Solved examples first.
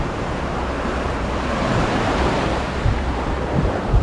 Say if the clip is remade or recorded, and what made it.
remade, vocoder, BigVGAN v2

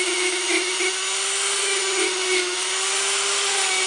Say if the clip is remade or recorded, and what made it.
recorded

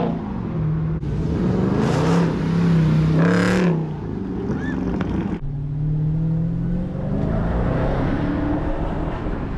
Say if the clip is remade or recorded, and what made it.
recorded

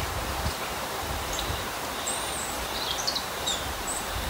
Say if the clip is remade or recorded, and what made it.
remade, vocoder, BigVGAN v2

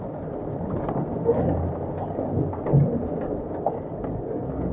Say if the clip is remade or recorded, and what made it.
recorded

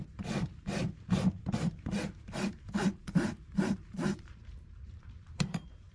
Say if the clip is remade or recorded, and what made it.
remade, vocoder, BigVGAN v2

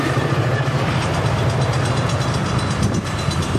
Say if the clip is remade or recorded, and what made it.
remade, vocoder, BigVGAN v2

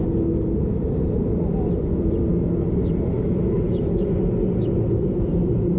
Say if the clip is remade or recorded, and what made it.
remade, vocoder, BigVGAN v2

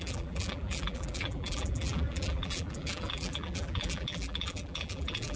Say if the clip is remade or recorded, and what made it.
remade, vocoder, BigVGAN v2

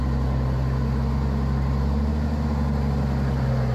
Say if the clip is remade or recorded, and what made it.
recorded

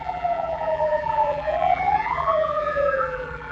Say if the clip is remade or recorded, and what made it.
remade, vocoder, BigVGAN v2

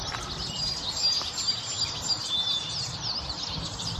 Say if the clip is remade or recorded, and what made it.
recorded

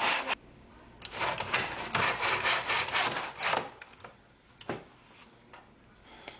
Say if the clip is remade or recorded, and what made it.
remade, vocoder, BigVGAN v2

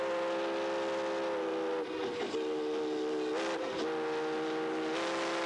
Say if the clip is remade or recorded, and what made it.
recorded